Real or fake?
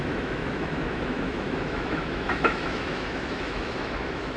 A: fake